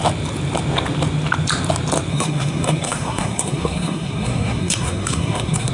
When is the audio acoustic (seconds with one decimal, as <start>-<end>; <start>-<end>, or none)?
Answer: 0.0-2.1